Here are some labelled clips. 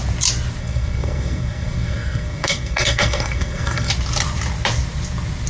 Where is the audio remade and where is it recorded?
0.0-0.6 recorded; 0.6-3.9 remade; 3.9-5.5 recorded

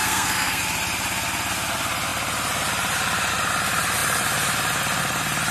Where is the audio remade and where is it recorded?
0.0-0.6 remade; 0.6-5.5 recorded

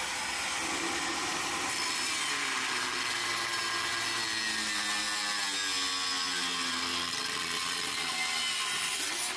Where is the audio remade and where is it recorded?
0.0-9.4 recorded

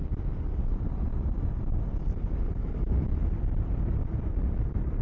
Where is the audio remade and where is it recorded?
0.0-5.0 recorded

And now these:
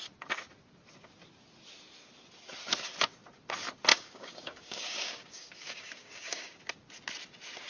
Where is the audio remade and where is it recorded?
0.0-3.9 recorded; 3.9-6.6 remade; 6.6-7.7 recorded